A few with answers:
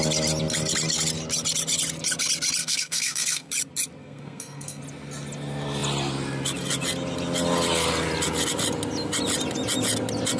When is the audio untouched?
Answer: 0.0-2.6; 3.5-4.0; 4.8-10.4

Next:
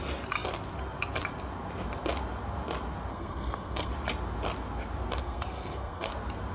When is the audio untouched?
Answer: 0.0-3.1; 3.9-5.2; 6.1-6.5

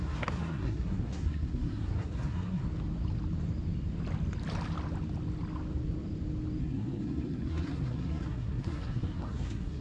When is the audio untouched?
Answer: 2.6-6.6